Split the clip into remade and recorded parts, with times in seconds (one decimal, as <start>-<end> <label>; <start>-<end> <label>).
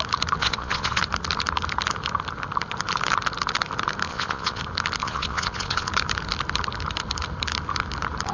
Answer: 0.0-0.4 recorded; 0.4-1.0 remade; 1.0-4.1 recorded; 4.1-4.6 remade; 4.6-5.0 recorded; 5.0-5.9 remade; 5.9-8.3 recorded